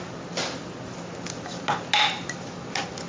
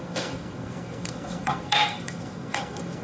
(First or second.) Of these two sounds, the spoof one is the second